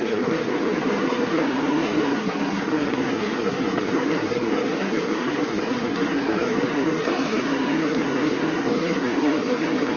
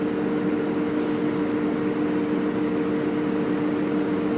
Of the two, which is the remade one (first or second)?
first